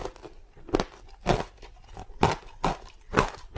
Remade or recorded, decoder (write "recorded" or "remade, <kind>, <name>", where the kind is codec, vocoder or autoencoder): recorded